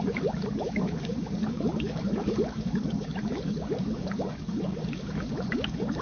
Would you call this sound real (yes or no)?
no